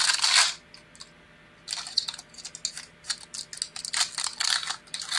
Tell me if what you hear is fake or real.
real